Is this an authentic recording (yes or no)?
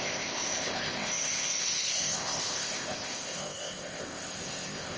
no